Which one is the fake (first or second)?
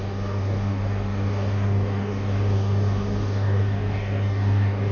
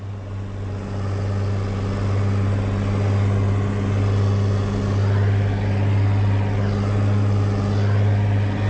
first